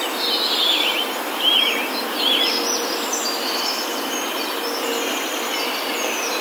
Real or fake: real